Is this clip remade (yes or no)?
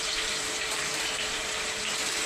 yes